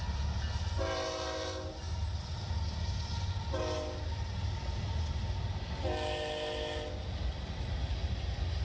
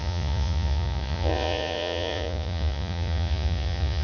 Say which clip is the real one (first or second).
first